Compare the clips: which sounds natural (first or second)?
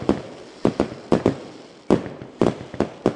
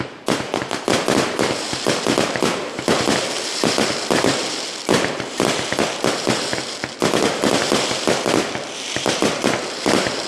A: first